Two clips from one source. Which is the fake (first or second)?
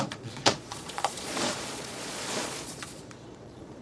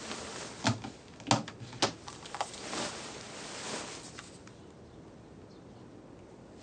first